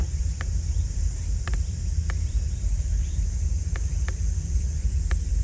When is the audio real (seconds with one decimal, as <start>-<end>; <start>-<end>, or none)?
none

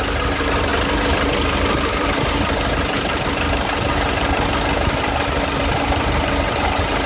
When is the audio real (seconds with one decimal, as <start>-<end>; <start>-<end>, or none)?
0.0-7.1